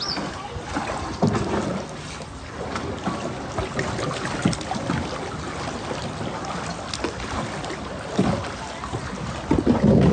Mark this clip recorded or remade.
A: recorded